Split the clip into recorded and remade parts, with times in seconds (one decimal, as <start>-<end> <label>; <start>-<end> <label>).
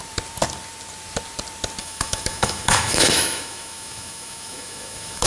0.0-1.8 recorded; 1.8-5.3 remade